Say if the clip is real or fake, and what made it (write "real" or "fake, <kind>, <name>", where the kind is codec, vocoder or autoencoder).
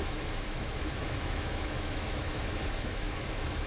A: fake, autoencoder, DAC-VAE